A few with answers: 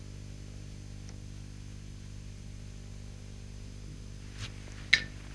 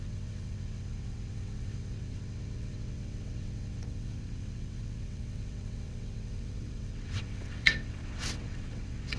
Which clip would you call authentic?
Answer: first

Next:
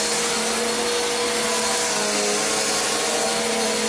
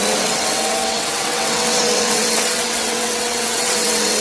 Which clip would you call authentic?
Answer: first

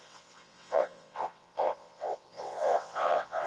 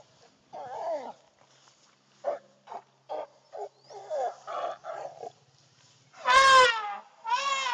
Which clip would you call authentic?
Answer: second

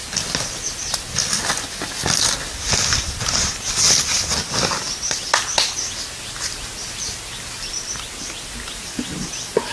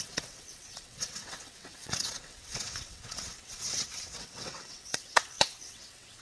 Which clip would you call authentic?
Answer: first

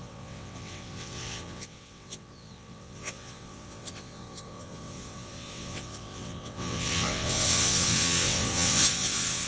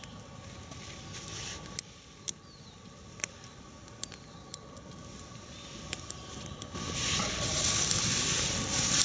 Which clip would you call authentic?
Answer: second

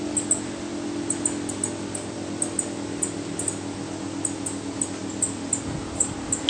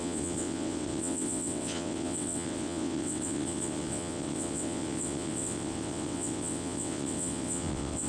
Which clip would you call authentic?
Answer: first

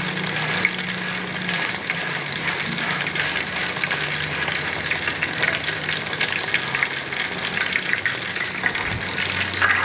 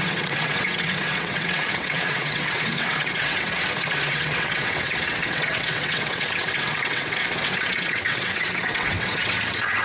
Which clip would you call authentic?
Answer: first